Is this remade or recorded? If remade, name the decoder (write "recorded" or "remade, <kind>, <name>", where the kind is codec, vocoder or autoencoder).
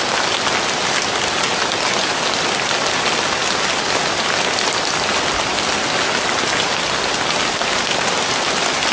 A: recorded